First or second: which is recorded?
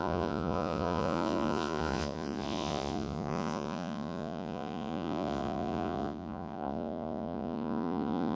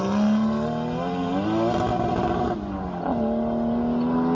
second